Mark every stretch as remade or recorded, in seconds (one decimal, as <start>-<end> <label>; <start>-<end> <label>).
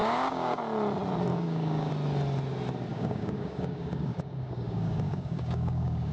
0.0-0.6 remade; 0.6-1.3 recorded; 1.3-1.9 remade; 1.9-2.9 recorded; 2.9-6.1 remade